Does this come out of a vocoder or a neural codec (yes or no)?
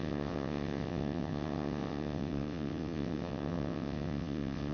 yes